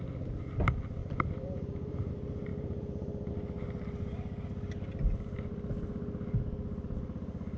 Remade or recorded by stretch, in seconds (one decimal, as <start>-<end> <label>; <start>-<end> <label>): 0.0-1.0 recorded; 1.0-2.1 remade; 2.1-2.5 recorded; 2.5-3.3 remade; 3.3-7.6 recorded